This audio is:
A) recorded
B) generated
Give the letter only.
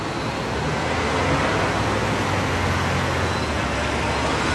A